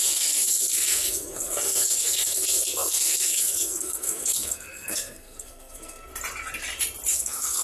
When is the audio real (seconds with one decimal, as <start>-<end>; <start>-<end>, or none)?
6.1-7.1